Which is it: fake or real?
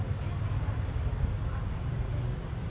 real